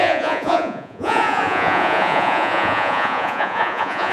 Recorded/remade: remade